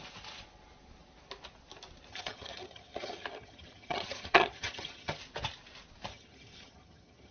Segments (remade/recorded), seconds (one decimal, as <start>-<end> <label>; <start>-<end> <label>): 0.0-2.1 recorded; 2.1-5.2 remade; 5.2-6.1 recorded; 6.1-7.3 remade